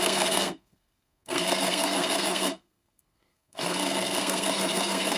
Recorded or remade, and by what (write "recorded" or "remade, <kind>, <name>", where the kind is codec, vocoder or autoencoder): remade, codec, SNAC